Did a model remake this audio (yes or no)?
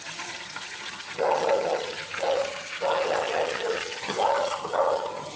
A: yes